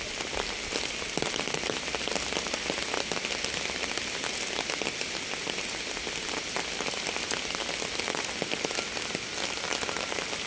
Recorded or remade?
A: recorded